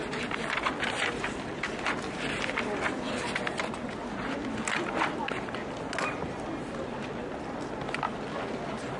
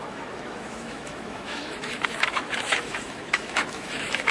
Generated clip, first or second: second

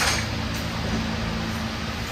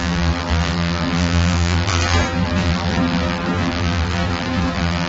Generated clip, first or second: second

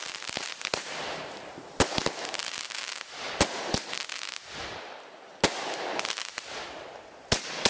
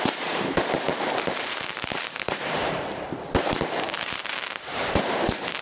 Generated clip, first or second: second